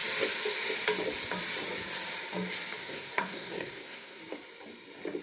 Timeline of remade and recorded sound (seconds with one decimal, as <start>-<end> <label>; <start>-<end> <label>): 0.0-2.8 recorded; 2.8-4.2 remade; 4.2-5.2 recorded